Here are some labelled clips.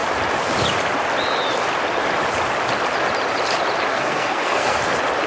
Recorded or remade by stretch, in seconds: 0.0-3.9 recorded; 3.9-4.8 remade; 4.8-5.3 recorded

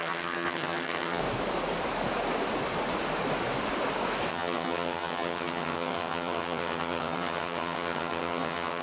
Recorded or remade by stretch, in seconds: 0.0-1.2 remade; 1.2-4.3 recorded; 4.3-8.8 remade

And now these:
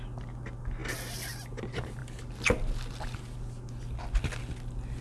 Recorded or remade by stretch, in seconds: 0.0-5.0 recorded

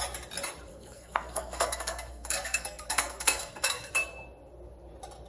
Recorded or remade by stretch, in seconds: 0.0-0.7 recorded; 0.7-3.9 remade; 3.9-5.3 recorded

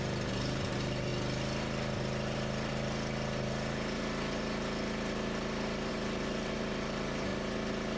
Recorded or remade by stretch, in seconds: 0.0-1.1 remade; 1.1-5.9 recorded; 5.9-7.3 remade; 7.3-8.0 recorded